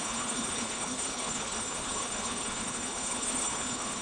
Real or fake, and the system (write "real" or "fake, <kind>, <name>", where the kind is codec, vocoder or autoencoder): fake, codec, HILCodec